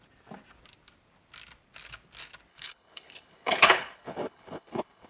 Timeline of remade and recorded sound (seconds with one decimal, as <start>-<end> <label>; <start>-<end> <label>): 0.0-2.5 recorded; 2.5-5.1 remade